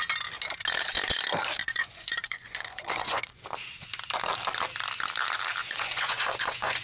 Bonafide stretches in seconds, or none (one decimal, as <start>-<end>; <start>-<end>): 0.0-1.6; 3.4-5.6